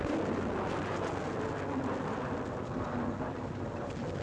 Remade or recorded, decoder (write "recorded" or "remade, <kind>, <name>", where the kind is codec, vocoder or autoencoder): recorded